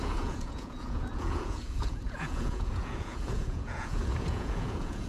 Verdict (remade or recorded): remade